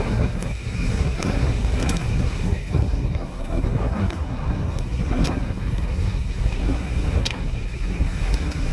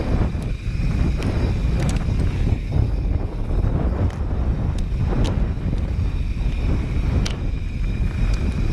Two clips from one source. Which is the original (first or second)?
second